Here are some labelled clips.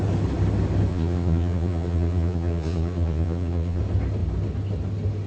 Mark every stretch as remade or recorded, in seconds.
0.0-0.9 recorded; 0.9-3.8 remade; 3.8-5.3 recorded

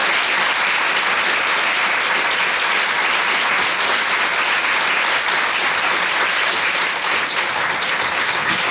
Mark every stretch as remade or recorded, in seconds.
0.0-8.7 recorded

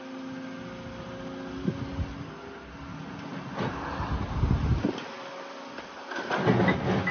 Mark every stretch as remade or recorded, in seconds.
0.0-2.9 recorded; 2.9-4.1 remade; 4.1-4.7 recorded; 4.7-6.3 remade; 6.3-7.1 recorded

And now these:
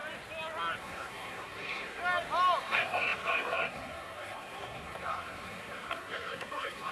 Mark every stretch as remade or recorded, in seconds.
0.0-0.8 recorded; 0.8-2.0 remade; 2.0-2.6 recorded; 2.6-6.9 remade

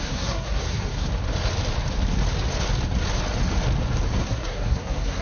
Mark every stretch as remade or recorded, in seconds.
0.0-1.1 remade; 1.1-4.2 recorded; 4.2-5.2 remade

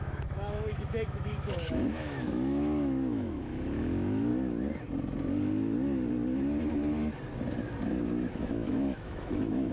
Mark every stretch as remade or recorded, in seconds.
0.0-4.3 remade; 4.3-8.3 recorded; 8.3-9.7 remade